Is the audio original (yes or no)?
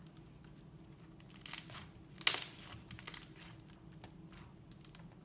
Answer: yes